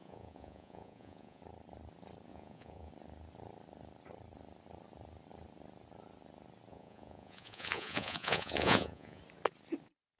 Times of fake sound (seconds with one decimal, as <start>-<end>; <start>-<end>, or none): 0.0-1.4; 2.3-2.9; 6.7-9.2